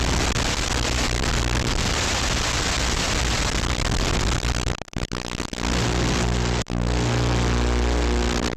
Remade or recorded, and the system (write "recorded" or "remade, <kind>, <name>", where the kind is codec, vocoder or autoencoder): recorded